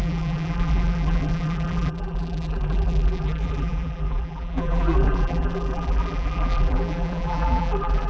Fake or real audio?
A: fake